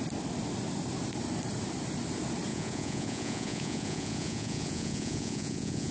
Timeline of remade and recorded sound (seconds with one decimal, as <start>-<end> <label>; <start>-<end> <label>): 0.0-2.5 recorded; 2.5-5.9 remade